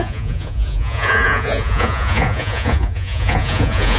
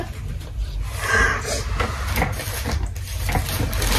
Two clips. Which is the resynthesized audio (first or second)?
first